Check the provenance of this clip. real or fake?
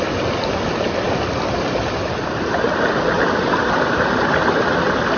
real